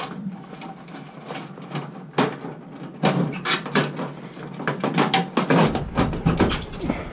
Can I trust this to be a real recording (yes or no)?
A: yes